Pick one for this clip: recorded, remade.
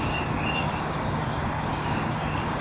remade